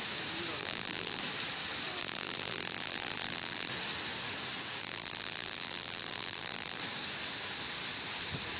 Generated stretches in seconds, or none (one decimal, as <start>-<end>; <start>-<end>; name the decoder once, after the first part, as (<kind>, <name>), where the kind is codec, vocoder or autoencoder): 0.6-1.2 (vocoder, BigVGAN v2); 2.0-3.7; 4.8-6.8